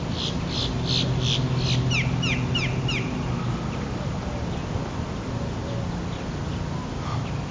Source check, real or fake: real